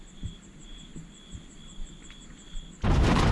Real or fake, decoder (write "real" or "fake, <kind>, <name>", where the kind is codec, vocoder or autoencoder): real